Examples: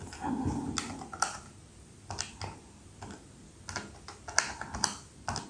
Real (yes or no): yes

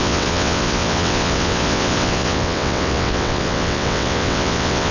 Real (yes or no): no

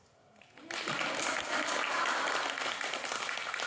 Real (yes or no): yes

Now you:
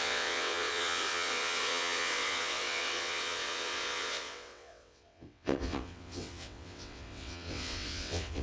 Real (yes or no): no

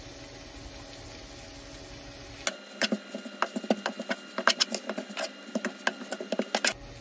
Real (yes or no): yes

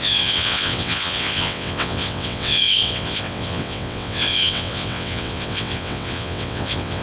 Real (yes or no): no